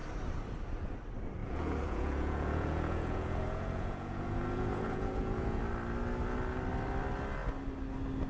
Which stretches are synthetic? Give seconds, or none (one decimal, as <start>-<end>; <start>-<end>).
1.4-5.6